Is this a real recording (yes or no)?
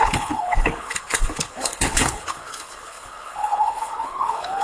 no